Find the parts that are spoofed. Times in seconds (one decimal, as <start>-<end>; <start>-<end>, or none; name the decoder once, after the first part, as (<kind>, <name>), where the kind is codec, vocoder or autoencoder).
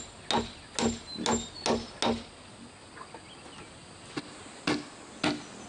none